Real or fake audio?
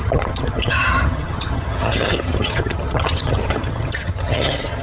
fake